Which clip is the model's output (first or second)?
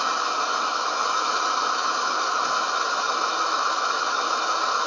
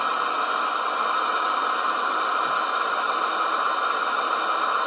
first